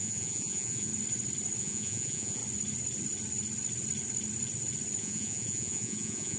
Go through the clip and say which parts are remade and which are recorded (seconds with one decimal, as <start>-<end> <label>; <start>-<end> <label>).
0.0-0.9 remade; 0.9-1.6 recorded; 1.6-2.4 remade; 2.4-5.0 recorded; 5.0-6.4 remade